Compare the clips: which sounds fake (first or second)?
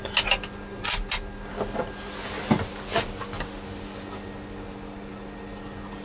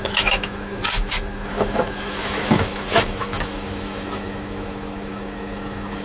second